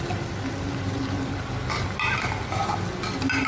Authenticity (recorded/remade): recorded